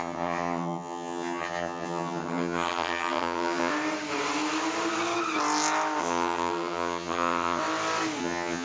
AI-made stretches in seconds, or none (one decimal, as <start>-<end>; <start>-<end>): 0.0-3.7; 6.0-7.6; 8.2-8.6